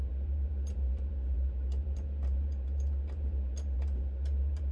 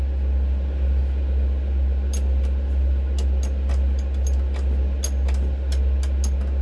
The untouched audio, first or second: second